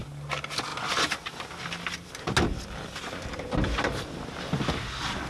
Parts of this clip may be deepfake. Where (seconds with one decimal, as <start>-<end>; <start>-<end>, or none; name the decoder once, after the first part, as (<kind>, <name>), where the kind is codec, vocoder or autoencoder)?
none